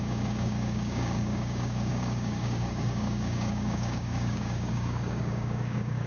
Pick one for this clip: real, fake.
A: fake